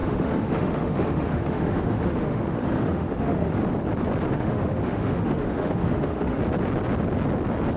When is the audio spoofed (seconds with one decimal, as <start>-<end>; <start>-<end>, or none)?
0.0-3.6; 4.3-6.4